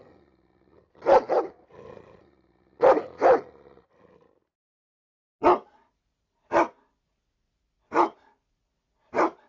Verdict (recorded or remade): recorded